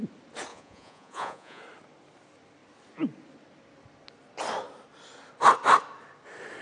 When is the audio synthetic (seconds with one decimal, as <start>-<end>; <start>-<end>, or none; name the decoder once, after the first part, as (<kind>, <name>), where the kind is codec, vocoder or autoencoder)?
0.5-1.6 (vocoder, Vocos)